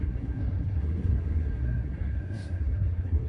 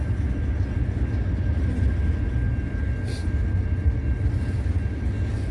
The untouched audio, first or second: second